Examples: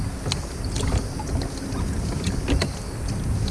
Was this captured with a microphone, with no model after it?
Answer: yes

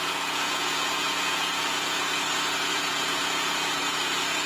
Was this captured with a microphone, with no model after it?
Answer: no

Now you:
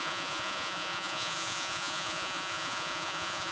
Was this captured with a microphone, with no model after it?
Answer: no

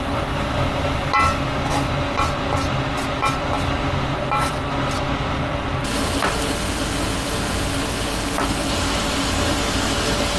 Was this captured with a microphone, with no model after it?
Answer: yes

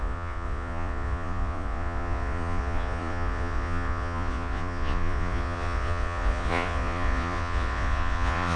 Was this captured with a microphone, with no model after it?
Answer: no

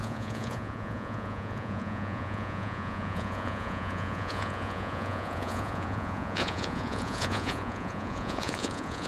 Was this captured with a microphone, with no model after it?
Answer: no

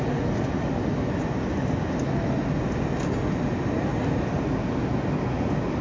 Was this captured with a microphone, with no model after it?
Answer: yes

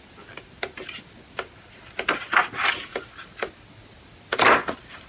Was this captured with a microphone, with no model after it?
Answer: yes